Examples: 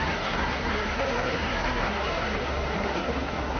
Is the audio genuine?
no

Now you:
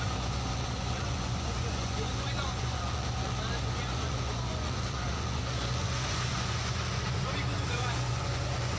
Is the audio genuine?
no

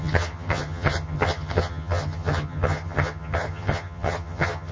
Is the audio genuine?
no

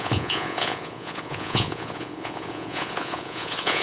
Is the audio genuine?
no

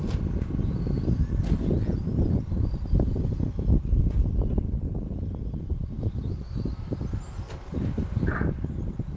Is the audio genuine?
yes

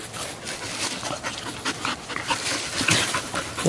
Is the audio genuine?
yes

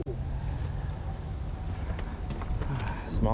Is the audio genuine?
yes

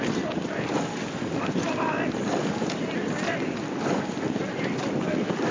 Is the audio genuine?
yes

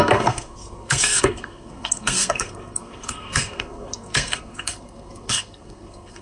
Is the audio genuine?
no